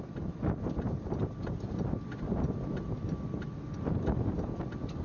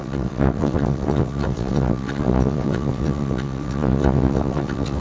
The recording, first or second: first